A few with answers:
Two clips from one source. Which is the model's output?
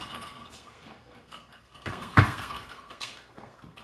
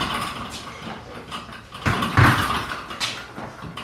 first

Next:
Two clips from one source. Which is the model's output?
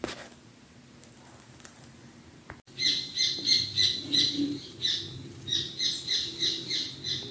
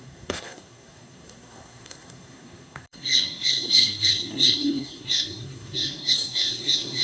second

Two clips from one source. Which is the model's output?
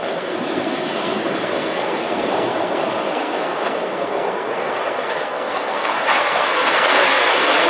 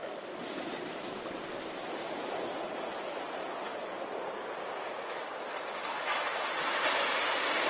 first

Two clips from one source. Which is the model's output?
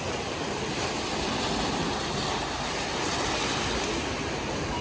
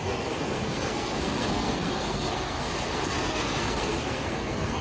second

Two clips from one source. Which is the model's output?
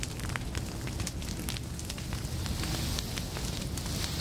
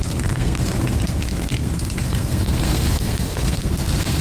second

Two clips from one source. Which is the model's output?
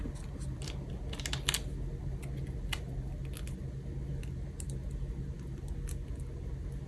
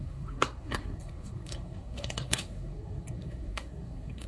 second